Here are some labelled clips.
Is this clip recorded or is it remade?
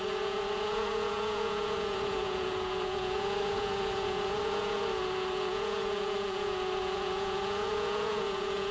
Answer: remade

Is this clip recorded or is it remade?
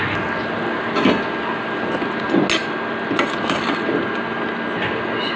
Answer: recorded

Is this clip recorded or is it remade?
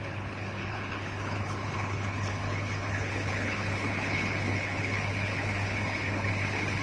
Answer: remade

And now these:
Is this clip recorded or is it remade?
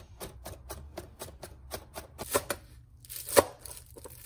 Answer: recorded